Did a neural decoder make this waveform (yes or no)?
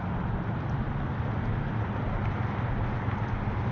no